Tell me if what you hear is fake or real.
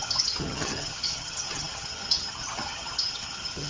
fake